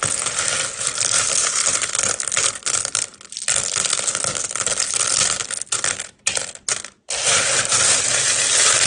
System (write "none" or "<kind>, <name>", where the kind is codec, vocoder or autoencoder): none